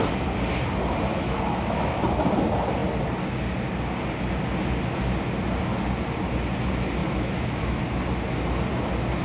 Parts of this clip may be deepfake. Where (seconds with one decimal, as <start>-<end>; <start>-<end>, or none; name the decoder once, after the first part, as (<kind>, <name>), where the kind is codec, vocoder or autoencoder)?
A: 1.1-2.0 (autoencoder, DAC-VAE); 7.0-7.8